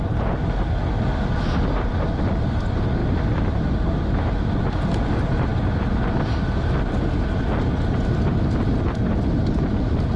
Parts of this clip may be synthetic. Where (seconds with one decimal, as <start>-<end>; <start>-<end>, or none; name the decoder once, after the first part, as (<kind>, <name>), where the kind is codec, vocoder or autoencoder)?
none